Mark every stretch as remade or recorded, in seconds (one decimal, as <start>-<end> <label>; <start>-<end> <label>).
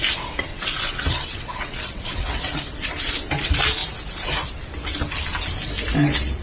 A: 0.0-0.5 recorded; 0.5-2.4 remade; 2.4-6.4 recorded